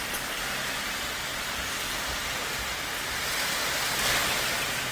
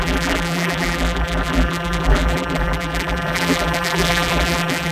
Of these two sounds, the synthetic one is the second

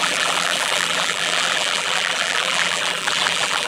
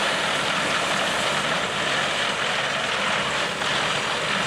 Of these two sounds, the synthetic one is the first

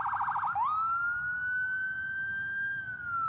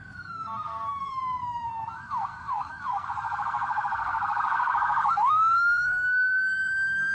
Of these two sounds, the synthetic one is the second